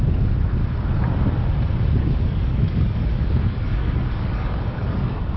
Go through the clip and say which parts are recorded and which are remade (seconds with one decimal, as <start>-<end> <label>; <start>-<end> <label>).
0.0-2.0 recorded; 2.0-5.4 remade